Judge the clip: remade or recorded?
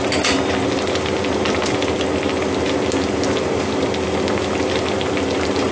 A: recorded